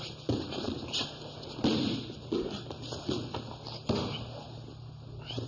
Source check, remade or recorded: recorded